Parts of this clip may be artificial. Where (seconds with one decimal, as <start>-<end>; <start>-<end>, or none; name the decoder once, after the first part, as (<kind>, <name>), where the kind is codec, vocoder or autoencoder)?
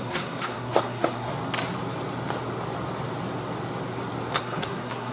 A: 0.0-1.3 (codec, SNAC); 4.4-5.1